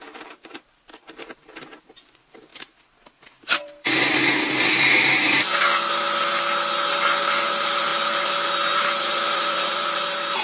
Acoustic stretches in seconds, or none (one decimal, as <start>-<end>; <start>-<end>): 2.5-7.4